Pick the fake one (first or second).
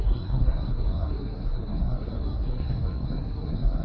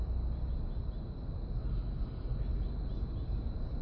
first